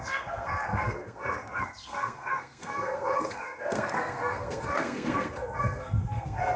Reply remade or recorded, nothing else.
remade